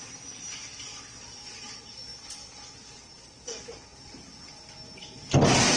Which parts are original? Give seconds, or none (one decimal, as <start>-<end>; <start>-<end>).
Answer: 0.0-5.8